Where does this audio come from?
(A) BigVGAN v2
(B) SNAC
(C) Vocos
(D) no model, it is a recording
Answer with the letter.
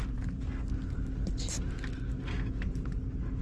D